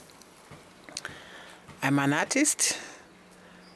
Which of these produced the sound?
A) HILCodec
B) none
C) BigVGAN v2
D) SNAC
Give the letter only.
B